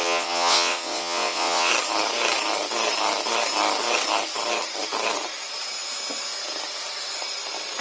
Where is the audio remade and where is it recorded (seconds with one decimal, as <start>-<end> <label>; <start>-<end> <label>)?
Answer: 0.0-1.7 remade; 1.7-7.8 recorded